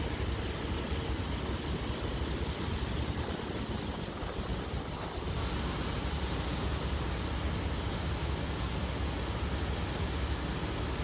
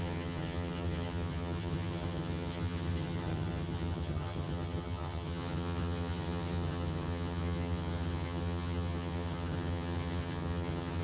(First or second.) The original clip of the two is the first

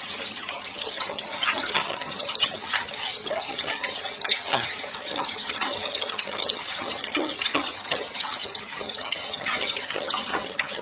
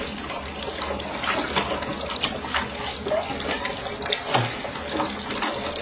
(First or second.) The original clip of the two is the second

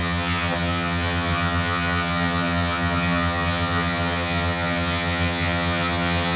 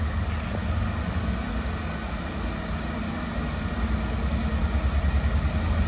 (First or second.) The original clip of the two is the second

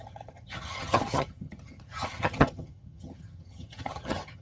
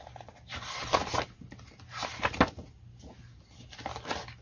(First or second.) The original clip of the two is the second